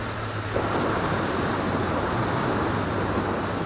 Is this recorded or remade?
remade